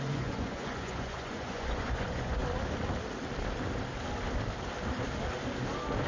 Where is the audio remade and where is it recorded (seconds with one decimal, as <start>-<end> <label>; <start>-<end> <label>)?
0.0-2.4 remade; 2.4-6.1 recorded